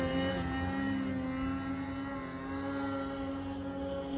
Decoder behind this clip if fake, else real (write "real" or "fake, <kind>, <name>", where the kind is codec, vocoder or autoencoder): real